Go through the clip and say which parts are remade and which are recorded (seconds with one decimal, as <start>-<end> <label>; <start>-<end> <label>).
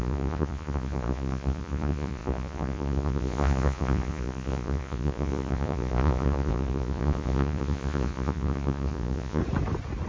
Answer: 0.0-9.4 remade; 9.4-10.1 recorded